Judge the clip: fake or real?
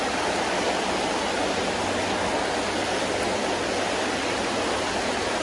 real